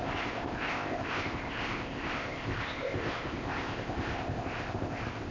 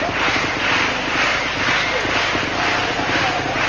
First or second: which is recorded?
second